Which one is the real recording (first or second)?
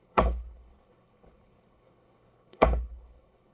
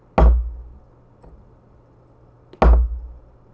second